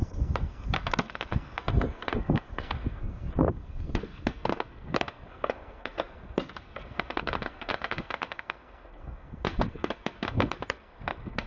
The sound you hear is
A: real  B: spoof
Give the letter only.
B